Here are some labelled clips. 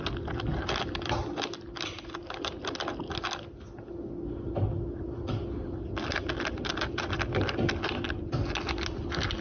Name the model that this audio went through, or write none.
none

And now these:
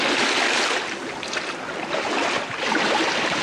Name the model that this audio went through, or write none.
none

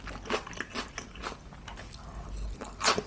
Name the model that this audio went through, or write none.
none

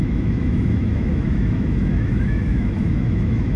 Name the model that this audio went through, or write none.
autoencoder, DAC-VAE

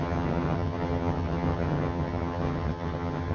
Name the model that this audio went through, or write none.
vocoder, HiFi-GAN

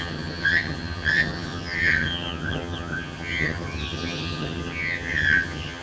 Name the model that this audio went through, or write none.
vocoder, HiFi-GAN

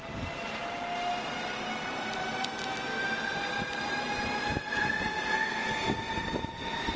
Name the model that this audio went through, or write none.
none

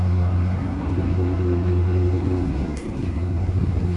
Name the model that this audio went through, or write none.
codec, SNAC